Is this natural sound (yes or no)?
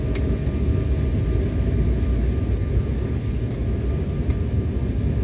yes